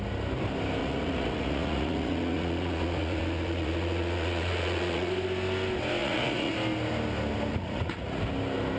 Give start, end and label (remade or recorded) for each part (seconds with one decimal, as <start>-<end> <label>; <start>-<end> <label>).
0.0-0.8 recorded; 0.8-5.1 remade; 5.1-6.0 recorded; 6.0-6.5 remade; 6.5-7.5 recorded; 7.5-8.2 remade; 8.2-8.8 recorded